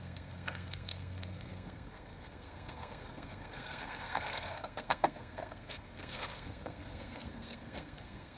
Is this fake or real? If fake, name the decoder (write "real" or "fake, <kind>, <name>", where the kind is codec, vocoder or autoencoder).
fake, codec, SNAC